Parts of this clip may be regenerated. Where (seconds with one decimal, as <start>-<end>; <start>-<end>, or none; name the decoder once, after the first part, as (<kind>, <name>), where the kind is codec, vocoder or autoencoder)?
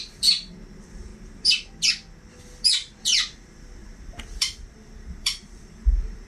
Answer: 0.0-1.1 (vocoder, BigVGAN v2); 3.0-6.3